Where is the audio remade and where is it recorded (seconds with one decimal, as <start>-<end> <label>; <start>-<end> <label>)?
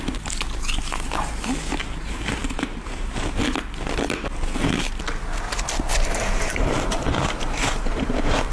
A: 0.0-2.4 recorded; 2.4-3.2 remade; 3.2-5.9 recorded; 5.9-8.5 remade